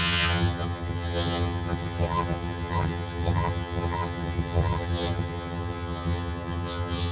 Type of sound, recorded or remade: remade